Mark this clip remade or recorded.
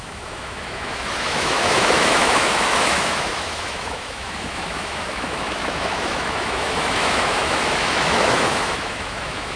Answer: remade